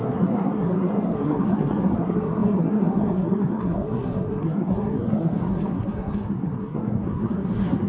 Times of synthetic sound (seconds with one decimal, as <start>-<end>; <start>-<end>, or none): 0.0-7.9